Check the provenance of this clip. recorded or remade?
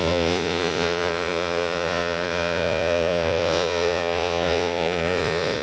remade